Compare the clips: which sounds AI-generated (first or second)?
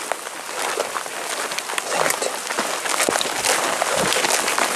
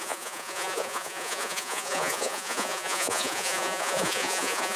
second